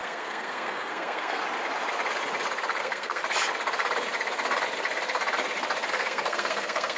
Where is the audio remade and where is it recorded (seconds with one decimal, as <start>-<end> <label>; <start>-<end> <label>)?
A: 0.0-1.4 remade; 1.4-2.8 recorded; 2.8-3.2 remade; 3.2-5.9 recorded; 5.9-7.0 remade